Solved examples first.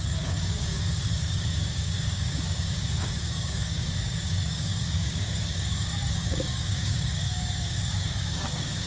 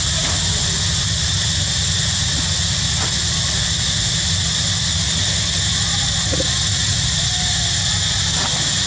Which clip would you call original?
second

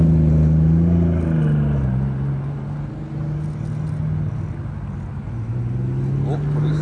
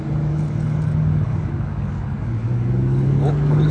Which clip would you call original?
first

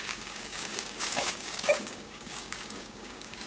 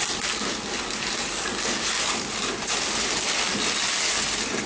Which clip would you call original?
second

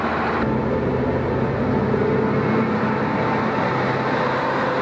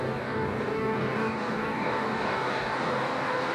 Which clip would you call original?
first